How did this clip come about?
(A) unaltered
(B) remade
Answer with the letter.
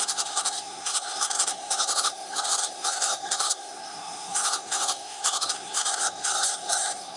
B